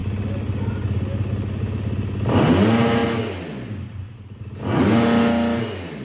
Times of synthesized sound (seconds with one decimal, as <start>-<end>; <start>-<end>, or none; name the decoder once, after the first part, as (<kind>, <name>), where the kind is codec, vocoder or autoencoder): none